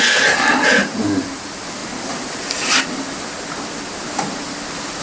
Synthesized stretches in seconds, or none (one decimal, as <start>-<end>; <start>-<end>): none